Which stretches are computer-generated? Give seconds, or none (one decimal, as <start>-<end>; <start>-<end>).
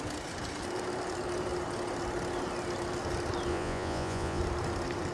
3.5-4.4